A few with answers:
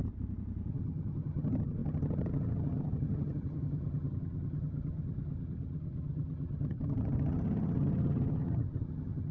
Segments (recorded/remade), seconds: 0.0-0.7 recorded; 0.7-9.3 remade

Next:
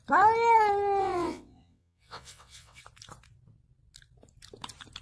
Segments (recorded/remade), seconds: 0.0-1.0 recorded; 1.0-2.8 remade; 2.8-5.0 recorded

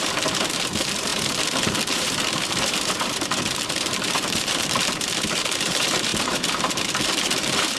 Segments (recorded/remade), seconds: 0.0-7.8 remade

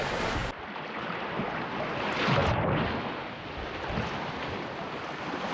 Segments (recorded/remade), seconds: 0.0-5.5 recorded